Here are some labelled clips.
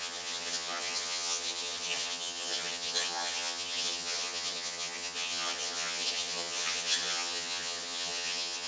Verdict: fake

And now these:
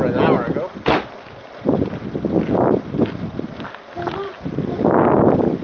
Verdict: real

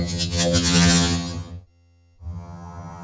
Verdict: fake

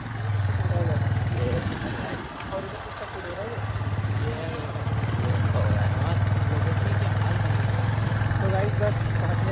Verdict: real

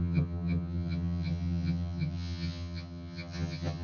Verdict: fake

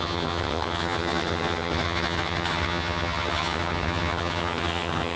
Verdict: fake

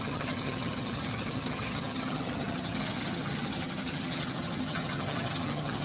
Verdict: fake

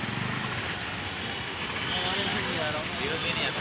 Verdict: real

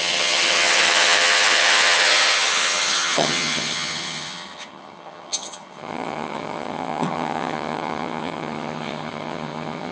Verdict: fake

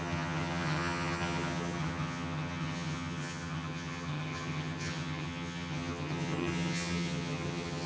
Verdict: fake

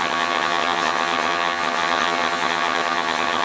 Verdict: fake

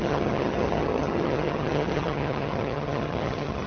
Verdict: fake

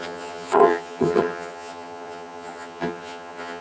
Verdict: fake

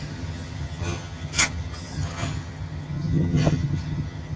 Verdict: fake